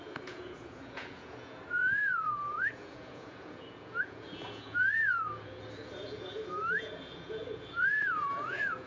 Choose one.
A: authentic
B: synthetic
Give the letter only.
B